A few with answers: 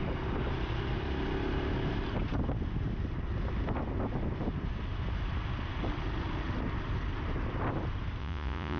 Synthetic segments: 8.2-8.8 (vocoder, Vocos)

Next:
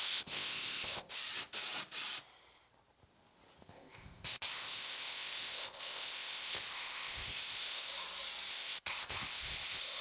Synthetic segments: 0.0-1.2 (codec, ZipCodec); 3.6-7.9; 8.5-10.0

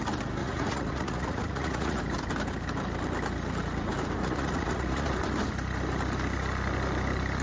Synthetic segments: 0.4-2.0 (vocoder, Vocos); 4.2-5.1

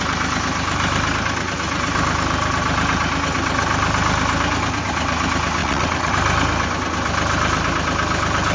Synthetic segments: 5.6-6.1 (vocoder, WaveNeXt)

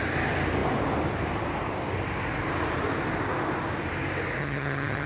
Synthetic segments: 4.4-5.1 (vocoder, HiFi-GAN)

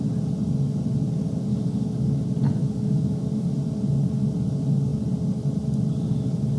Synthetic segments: 1.5-2.2 (codec, DAC); 2.6-3.5

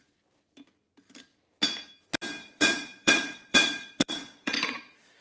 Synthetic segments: 2.4-5.2 (vocoder, Vocos)

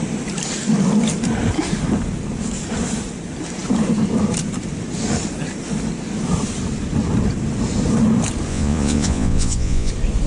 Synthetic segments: 8.5-9.9 (vocoder, Vocos)